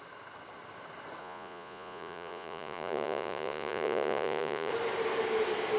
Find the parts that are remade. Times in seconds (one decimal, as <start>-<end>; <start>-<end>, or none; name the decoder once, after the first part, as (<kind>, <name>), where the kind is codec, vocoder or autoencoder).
1.2-4.7 (vocoder, Vocos)